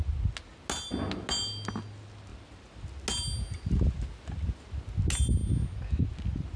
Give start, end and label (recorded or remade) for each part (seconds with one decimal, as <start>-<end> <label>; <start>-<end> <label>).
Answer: 0.0-6.6 recorded